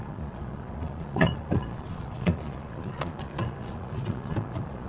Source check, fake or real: fake